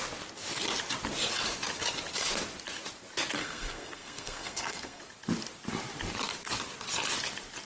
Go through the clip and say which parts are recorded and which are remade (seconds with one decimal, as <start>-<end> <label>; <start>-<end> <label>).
0.0-3.4 recorded; 3.4-5.0 remade; 5.0-7.6 recorded

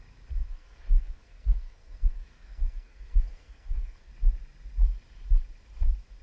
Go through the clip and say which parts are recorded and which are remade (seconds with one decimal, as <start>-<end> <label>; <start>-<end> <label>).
0.0-0.4 recorded; 0.4-4.1 remade; 4.1-6.2 recorded

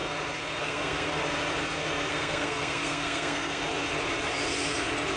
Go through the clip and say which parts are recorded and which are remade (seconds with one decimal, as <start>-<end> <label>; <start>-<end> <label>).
0.0-0.6 recorded; 0.6-1.2 remade; 1.2-2.1 recorded; 2.1-3.6 remade; 3.6-5.2 recorded

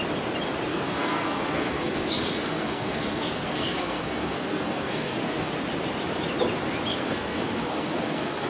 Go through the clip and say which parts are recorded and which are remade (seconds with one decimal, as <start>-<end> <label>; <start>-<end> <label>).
0.0-0.7 recorded; 0.7-5.5 remade; 5.5-6.9 recorded; 6.9-8.5 remade

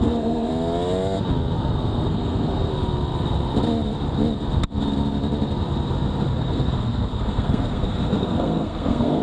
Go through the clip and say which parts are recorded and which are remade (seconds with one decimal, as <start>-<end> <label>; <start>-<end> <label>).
0.0-0.5 remade; 0.5-1.6 recorded; 1.6-2.7 remade; 2.7-6.4 recorded; 6.4-9.2 remade

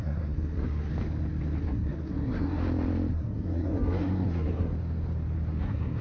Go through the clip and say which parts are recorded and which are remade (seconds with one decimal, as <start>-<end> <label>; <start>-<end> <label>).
0.0-0.9 remade; 0.9-1.6 recorded; 1.6-2.6 remade; 2.6-3.1 recorded; 3.1-4.7 remade; 4.7-5.5 recorded; 5.5-6.0 remade